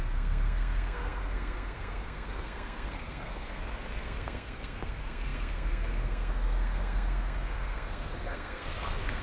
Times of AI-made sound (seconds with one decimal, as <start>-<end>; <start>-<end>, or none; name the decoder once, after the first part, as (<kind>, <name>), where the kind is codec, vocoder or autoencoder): 0.0-9.2 (codec, SNAC)